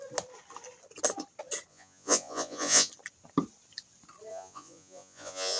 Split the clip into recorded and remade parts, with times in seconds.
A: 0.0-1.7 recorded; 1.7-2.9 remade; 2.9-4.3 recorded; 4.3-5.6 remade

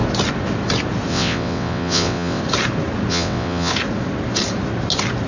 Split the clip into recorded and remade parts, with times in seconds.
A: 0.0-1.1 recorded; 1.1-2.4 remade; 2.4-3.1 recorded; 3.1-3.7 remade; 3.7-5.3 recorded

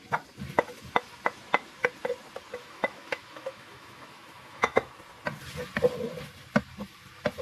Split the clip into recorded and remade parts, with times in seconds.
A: 0.0-2.6 recorded; 2.6-4.9 remade; 4.9-7.4 recorded